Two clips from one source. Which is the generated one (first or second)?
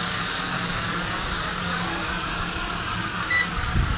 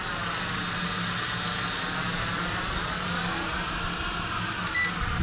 first